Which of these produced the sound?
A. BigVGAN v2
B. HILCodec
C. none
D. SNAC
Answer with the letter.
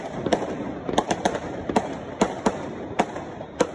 A